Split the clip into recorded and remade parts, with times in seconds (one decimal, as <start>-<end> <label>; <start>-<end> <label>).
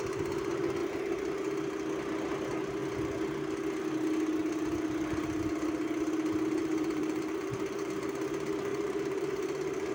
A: 0.0-6.6 recorded; 6.6-7.9 remade; 7.9-8.7 recorded; 8.7-9.9 remade